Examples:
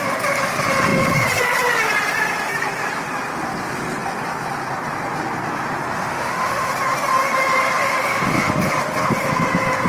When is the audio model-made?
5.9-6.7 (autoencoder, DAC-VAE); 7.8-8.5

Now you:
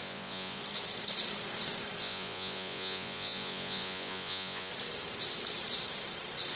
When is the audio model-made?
0.0-0.6 (vocoder, Vocos); 2.0-4.7

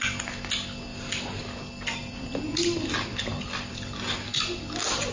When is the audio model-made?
none

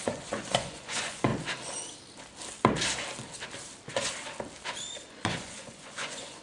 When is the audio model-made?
0.0-1.3 (vocoder, Vocos); 5.1-6.4

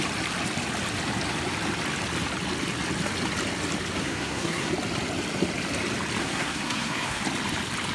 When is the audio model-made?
4.0-4.7 (codec, SNAC); 6.2-7.2

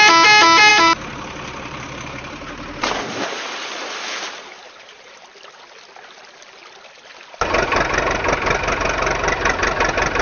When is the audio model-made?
0.7-5.1 (vocoder, BigVGAN v2)

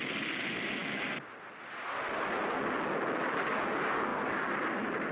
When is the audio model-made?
none